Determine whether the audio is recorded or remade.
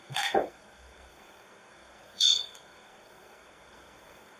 remade